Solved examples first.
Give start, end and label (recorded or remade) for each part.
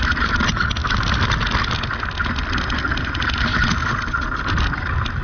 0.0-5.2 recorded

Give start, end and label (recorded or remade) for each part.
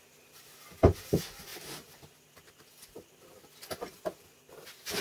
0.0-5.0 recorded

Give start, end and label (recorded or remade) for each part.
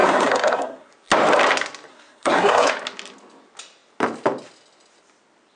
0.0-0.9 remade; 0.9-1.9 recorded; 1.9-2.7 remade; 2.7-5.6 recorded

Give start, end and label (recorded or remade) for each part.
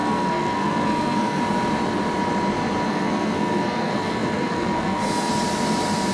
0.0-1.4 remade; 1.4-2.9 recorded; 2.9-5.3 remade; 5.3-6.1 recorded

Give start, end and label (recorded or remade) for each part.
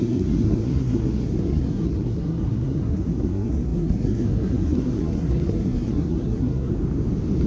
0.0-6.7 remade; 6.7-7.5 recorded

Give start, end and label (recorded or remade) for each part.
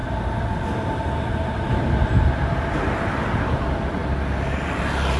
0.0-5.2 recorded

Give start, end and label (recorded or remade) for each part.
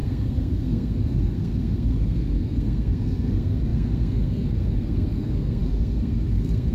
0.0-6.7 remade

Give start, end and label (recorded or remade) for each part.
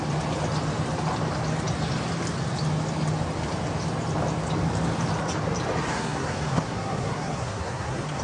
0.0-5.9 recorded; 5.9-8.2 remade